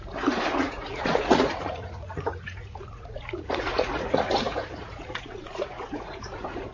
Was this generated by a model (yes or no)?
yes